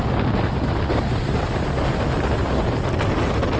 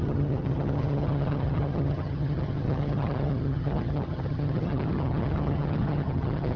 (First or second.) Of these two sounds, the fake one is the second